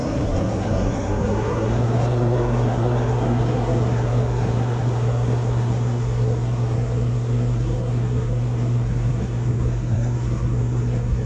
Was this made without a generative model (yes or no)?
no